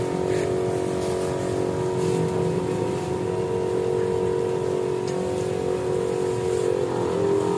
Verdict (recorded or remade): recorded